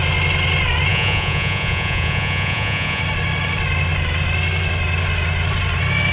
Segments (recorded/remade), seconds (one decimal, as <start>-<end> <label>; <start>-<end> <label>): 0.0-0.9 recorded; 0.9-3.0 remade; 3.0-6.1 recorded